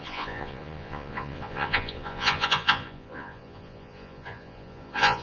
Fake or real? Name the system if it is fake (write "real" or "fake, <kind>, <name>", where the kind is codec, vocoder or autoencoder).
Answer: fake, vocoder, Vocos